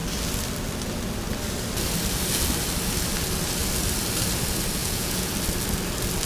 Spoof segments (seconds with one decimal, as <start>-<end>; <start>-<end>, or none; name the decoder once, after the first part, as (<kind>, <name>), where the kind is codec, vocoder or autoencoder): 4.8-5.3 (vocoder, Vocos)